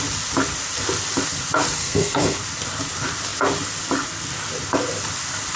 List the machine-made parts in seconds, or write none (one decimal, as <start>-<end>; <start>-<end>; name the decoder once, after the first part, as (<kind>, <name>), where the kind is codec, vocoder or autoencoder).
1.8-2.4 (codec, SNAC)